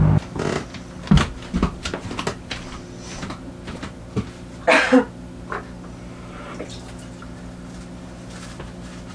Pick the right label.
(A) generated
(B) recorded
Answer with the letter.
B